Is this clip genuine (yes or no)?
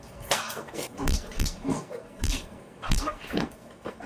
no